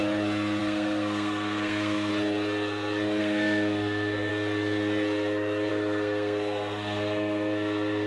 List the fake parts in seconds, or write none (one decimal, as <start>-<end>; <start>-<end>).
0.6-2.1; 3.2-4.3; 5.7-8.1